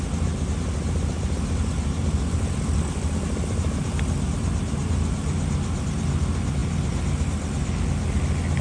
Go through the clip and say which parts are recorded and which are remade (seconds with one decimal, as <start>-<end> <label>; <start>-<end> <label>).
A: 0.0-2.0 recorded; 2.0-5.9 remade; 5.9-8.6 recorded

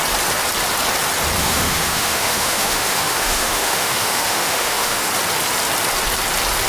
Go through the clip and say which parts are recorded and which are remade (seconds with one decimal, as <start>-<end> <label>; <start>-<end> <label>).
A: 0.0-1.4 recorded; 1.4-5.1 remade; 5.1-6.7 recorded

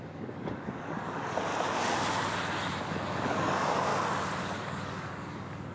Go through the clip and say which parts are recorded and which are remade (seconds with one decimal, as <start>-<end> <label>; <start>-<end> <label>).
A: 0.0-1.5 remade; 1.5-2.8 recorded; 2.8-3.9 remade; 3.9-4.4 recorded; 4.4-5.7 remade